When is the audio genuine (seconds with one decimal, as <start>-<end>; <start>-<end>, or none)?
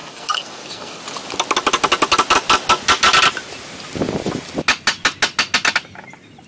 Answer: 1.0-6.5